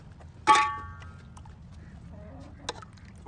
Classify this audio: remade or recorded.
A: recorded